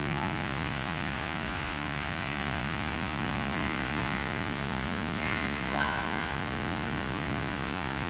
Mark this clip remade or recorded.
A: remade